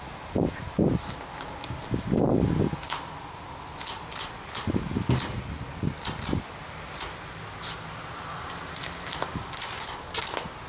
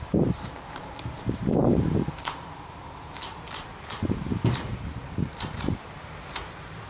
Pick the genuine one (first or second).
first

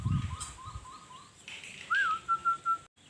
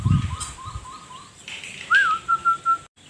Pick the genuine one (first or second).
first